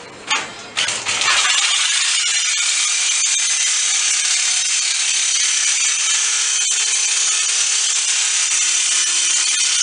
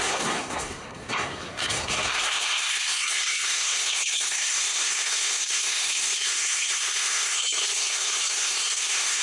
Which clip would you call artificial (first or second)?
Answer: second